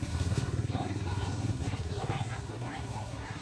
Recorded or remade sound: remade